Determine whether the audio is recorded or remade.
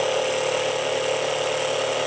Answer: recorded